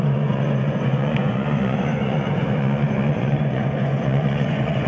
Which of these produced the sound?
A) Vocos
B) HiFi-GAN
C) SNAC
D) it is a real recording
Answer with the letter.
A